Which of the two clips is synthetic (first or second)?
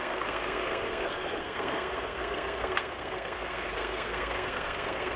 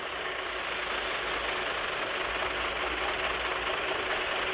first